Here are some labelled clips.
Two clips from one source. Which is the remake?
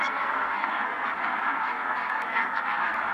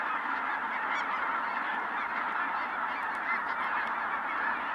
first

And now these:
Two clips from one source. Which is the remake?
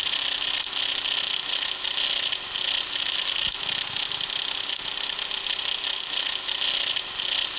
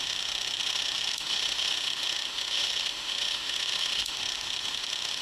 second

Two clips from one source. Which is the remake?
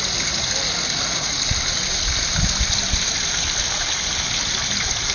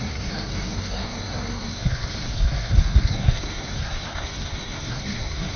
second